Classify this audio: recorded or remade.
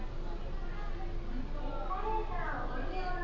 recorded